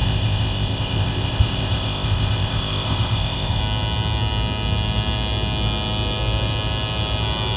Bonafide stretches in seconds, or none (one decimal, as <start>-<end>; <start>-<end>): 3.6-7.6